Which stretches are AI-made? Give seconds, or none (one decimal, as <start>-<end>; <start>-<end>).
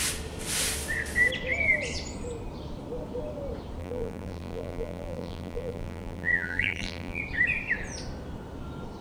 3.8-7.2